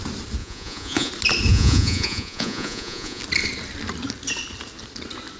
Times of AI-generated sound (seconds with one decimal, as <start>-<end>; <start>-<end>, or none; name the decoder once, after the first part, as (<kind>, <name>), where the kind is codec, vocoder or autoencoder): 0.4-1.1 (vocoder, Vocos); 1.5-3.2

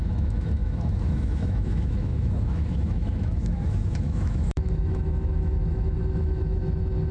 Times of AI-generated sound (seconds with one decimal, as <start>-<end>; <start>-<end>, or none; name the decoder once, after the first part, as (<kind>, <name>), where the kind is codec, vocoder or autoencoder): 0.0-6.6 (autoencoder, DAC-VAE)

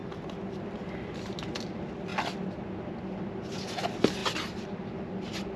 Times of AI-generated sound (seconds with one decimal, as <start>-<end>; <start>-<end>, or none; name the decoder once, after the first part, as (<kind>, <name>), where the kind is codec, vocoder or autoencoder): none

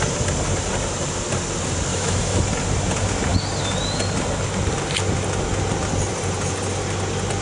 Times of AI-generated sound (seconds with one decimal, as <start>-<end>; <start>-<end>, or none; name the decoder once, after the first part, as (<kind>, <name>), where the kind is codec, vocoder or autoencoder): 1.9-2.4 (autoencoder, DAC-VAE)

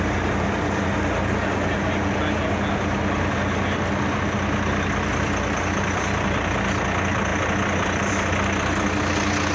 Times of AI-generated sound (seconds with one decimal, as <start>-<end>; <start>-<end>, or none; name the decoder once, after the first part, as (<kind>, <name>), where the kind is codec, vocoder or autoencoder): none

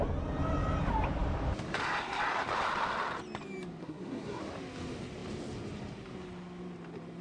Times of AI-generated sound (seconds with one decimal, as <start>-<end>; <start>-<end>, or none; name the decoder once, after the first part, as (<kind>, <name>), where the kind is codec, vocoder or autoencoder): 3.8-4.4 (codec, SNAC)

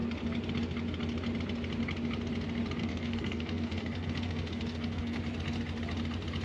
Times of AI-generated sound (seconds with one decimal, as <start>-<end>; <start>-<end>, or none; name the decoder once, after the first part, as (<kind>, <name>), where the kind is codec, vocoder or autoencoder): 2.8-5.2 (codec, SNAC)

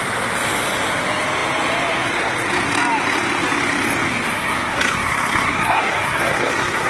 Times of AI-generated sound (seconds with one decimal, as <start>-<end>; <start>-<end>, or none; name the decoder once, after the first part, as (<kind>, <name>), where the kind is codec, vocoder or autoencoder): 4.3-6.9 (codec, SNAC)